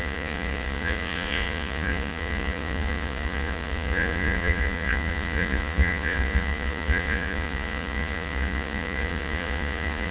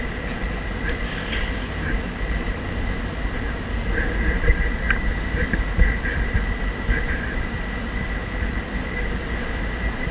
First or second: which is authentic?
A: second